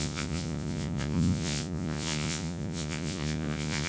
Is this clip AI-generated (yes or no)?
yes